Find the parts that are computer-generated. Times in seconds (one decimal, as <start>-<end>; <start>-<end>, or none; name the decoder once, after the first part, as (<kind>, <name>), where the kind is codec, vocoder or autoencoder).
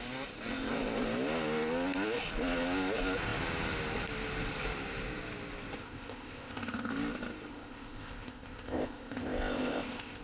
5.8-6.9 (codec, ZipCodec); 7.5-10.2